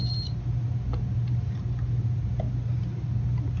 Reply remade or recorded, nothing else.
recorded